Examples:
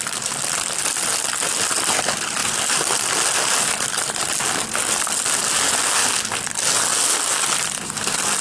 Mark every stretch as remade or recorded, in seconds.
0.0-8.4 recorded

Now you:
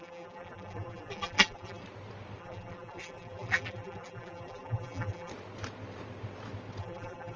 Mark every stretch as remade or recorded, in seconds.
0.0-1.8 remade; 1.8-2.4 recorded; 2.4-5.3 remade; 5.3-6.8 recorded; 6.8-7.4 remade